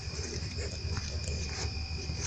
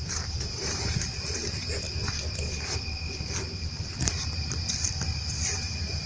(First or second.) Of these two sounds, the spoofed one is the second